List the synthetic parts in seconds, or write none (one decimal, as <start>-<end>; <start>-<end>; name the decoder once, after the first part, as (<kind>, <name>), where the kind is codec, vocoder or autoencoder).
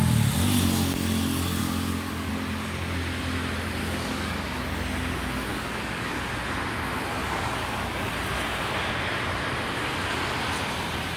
1.6-2.3 (codec, DAC); 3.8-4.6; 5.5-6.3; 7.2-8.1